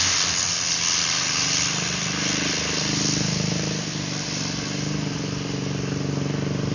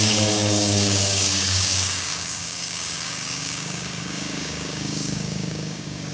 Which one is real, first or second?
first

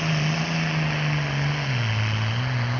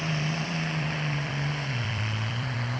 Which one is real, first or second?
first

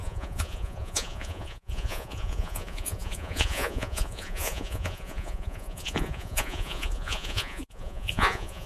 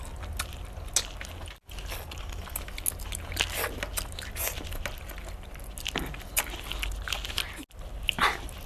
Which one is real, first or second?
second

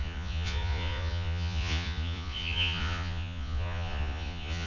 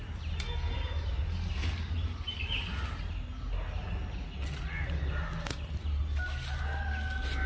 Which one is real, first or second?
second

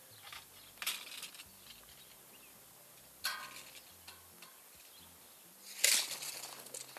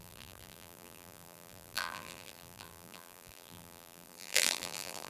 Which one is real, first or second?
first